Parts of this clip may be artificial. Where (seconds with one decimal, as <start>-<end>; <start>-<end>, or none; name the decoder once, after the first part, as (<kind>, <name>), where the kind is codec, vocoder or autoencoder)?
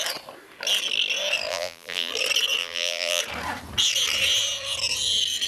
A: 1.5-2.1 (vocoder, BigVGAN v2); 2.6-3.2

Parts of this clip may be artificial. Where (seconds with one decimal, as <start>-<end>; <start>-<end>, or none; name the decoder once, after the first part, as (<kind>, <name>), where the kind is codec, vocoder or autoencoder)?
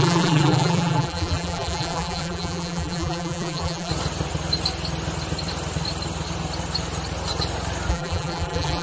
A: 0.0-3.9 (vocoder, BigVGAN v2); 7.9-8.8